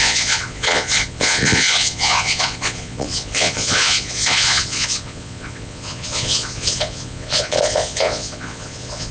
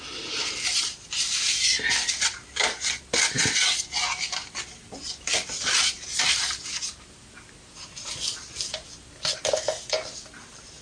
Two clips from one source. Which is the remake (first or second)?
first